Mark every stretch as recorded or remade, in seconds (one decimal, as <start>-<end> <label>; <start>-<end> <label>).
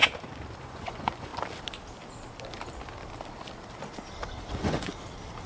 0.0-0.6 recorded; 0.6-1.3 remade; 1.3-4.5 recorded; 4.5-4.9 remade; 4.9-5.5 recorded